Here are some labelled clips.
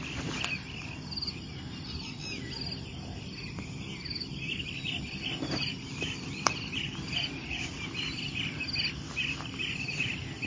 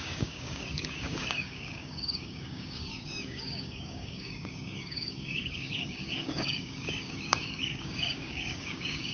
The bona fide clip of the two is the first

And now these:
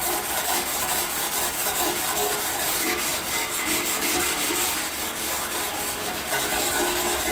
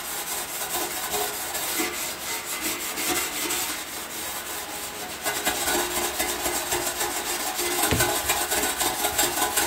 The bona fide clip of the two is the second